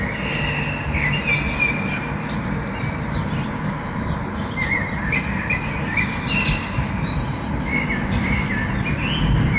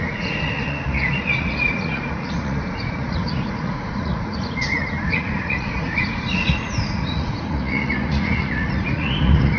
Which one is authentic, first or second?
first